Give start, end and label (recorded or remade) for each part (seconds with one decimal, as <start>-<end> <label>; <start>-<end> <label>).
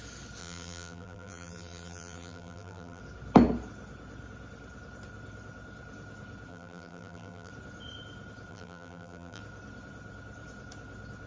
0.0-0.4 recorded; 0.4-3.0 remade; 3.0-6.5 recorded; 6.5-7.5 remade; 7.5-8.5 recorded; 8.5-9.4 remade; 9.4-11.3 recorded